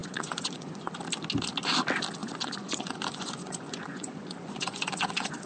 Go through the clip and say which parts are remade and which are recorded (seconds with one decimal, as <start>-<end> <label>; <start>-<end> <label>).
0.0-0.9 remade; 0.9-2.2 recorded; 2.2-5.5 remade